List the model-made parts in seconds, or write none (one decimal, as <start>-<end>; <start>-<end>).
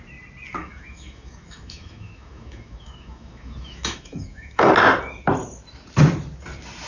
0.6-4.7